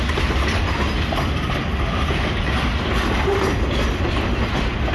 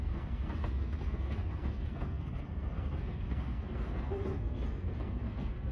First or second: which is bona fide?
first